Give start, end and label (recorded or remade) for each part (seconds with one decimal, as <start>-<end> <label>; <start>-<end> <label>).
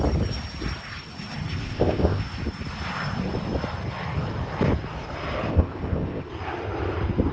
0.0-1.6 recorded; 1.6-2.2 remade; 2.2-5.5 recorded; 5.5-6.3 remade; 6.3-7.3 recorded